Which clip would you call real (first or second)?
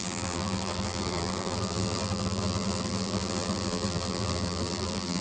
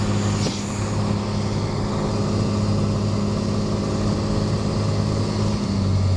second